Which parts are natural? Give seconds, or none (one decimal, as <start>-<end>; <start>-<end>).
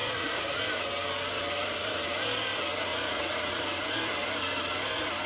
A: 0.6-2.9; 3.6-5.3